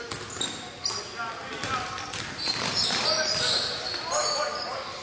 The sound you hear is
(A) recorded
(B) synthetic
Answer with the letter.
A